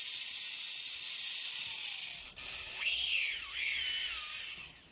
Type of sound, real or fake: real